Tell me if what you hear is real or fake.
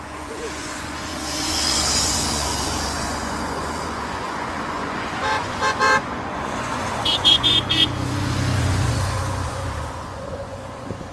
fake